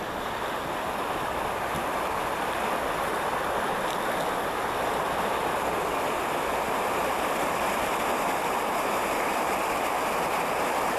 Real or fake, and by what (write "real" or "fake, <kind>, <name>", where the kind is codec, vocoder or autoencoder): real